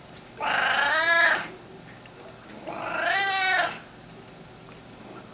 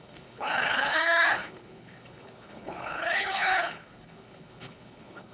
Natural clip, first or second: first